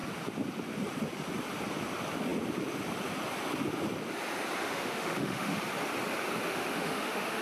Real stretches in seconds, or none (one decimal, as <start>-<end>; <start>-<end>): 0.0-4.6; 5.6-6.5